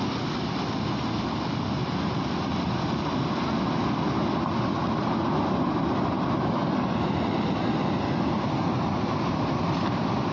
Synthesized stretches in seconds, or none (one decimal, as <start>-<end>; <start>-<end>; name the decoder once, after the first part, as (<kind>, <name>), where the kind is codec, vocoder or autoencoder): none